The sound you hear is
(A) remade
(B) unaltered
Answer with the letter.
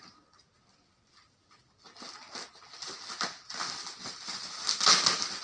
B